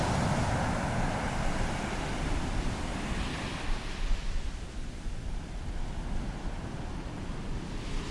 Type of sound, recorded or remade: recorded